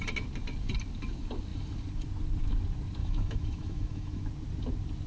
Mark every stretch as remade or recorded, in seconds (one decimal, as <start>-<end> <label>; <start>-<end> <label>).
0.0-3.0 recorded; 3.0-4.2 remade; 4.2-5.1 recorded